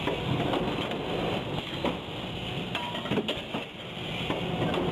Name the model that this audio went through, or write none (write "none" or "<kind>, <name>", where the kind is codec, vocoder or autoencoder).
none